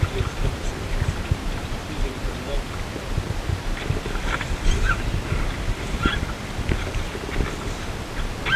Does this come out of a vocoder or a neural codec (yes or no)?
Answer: no